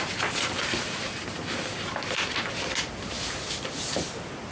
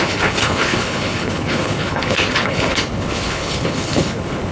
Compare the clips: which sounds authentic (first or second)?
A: first